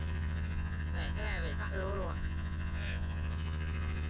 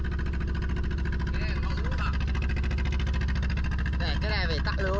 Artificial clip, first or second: first